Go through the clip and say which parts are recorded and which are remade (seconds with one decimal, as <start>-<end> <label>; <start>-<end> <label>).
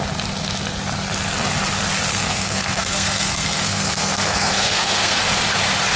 0.0-2.1 recorded; 2.1-5.2 remade; 5.2-6.0 recorded